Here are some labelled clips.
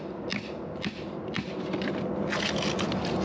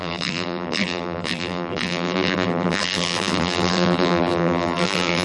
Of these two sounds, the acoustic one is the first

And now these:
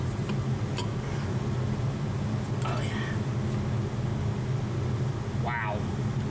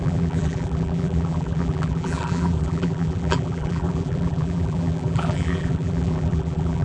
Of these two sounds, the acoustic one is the first